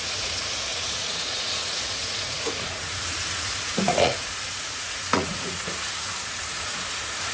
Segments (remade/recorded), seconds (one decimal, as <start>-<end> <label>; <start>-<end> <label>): 0.0-7.3 remade

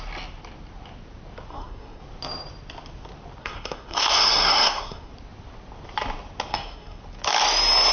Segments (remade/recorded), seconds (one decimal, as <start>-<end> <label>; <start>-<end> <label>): 0.0-1.5 recorded; 1.5-2.0 remade; 2.0-3.4 recorded; 3.4-5.1 remade; 5.1-6.5 recorded; 6.5-7.0 remade; 7.0-7.9 recorded

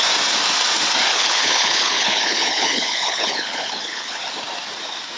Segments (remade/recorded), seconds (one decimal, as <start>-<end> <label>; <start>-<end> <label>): 0.0-1.1 recorded; 1.1-4.2 remade; 4.2-5.2 recorded

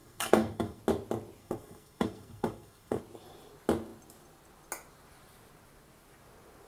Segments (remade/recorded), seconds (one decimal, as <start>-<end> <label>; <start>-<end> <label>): 0.0-0.8 remade; 0.8-1.4 recorded; 1.4-3.0 remade; 3.0-6.7 recorded

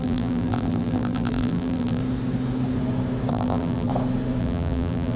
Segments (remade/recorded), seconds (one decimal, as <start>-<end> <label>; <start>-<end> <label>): 0.0-2.0 remade; 2.0-3.3 recorded; 3.3-3.9 remade; 3.9-4.4 recorded; 4.4-5.2 remade

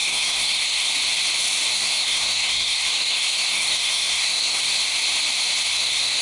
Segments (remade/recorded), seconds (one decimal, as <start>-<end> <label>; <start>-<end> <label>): 0.0-0.9 remade; 0.9-1.7 recorded; 1.7-4.6 remade; 4.6-5.7 recorded; 5.7-6.2 remade

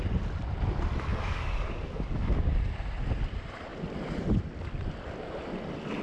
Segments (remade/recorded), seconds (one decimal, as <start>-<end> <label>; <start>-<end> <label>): 0.0-1.1 recorded; 1.1-2.5 remade; 2.5-6.0 recorded